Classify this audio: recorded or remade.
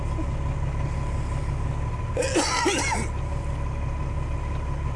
recorded